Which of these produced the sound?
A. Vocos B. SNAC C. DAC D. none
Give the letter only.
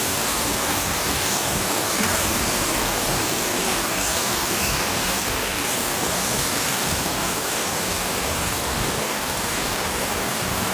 C